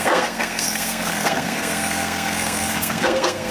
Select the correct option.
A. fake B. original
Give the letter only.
A